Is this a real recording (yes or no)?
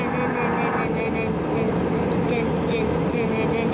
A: yes